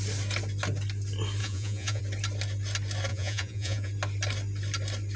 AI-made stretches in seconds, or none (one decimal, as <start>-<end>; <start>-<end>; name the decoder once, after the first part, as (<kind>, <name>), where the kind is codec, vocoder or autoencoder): 1.4-2.0 (vocoder, Vocos); 3.1-3.9